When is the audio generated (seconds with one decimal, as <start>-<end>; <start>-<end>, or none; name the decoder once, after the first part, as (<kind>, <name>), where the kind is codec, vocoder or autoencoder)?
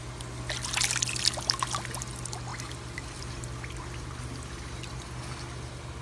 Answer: none